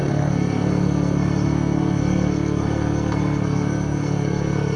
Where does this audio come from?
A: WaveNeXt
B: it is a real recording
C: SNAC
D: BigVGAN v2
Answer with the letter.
C